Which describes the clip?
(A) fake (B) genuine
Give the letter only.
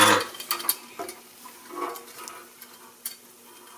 B